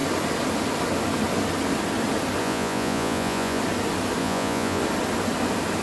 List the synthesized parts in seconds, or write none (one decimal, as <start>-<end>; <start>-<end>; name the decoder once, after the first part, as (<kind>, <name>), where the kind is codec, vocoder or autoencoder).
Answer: 2.4-3.6 (vocoder, Vocos); 4.2-4.8